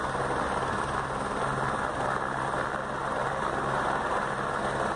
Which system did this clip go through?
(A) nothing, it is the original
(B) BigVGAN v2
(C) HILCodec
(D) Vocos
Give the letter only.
A